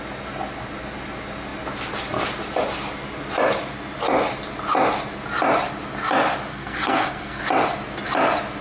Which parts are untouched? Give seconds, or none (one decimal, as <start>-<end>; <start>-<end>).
0.0-6.5; 7.4-8.6